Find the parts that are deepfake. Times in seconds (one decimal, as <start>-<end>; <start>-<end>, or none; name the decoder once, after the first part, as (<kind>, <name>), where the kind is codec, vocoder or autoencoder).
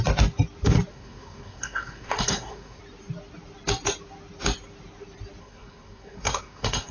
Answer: 0.9-2.8 (codec, SNAC); 5.4-6.9